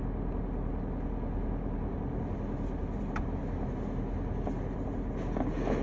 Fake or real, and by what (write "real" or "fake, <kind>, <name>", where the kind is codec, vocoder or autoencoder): real